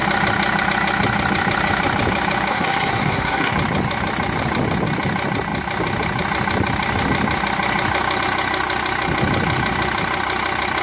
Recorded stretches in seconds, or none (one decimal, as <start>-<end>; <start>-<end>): 0.0-2.5; 3.5-10.8